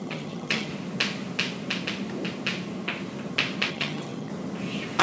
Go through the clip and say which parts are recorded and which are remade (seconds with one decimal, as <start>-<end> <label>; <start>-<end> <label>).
0.0-0.7 remade; 0.7-3.7 recorded; 3.7-4.3 remade; 4.3-5.0 recorded